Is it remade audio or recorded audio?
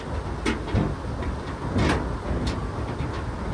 recorded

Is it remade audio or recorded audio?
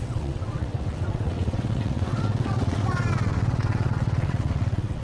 remade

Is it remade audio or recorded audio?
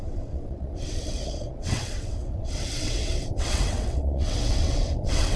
remade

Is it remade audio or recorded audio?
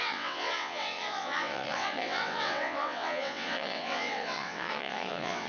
remade